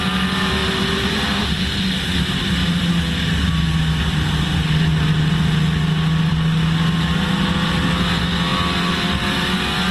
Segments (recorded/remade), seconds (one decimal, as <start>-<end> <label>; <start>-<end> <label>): 0.0-0.6 recorded; 0.6-1.8 remade; 1.8-9.9 recorded